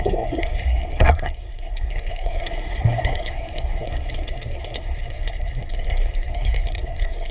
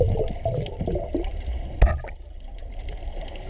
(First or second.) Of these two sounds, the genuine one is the second